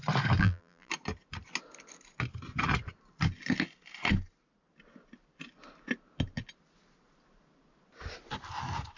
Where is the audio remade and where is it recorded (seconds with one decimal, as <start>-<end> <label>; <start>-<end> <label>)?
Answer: 0.0-0.4 recorded; 0.4-0.9 remade; 0.9-9.0 recorded

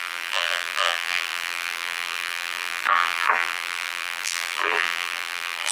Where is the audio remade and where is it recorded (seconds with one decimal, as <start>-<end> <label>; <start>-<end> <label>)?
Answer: 0.0-5.7 remade